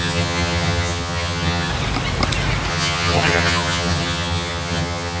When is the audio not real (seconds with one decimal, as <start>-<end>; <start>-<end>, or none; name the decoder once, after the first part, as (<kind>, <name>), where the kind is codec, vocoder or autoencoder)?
0.0-1.7 (vocoder, HiFi-GAN); 2.7-5.2